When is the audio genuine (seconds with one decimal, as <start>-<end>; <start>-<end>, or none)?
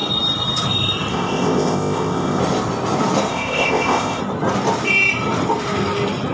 0.0-1.1; 2.4-3.3; 4.2-6.3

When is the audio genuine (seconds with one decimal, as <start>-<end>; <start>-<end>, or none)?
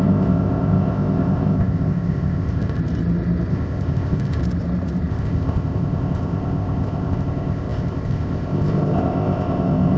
2.8-3.5; 4.4-5.1